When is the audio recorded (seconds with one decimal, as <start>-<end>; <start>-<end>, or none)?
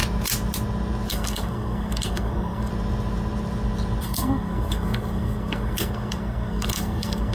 0.0-1.1; 2.7-4.0